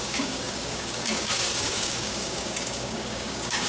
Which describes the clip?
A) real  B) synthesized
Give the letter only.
B